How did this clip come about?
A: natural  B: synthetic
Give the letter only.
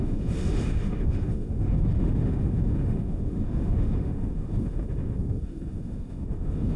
B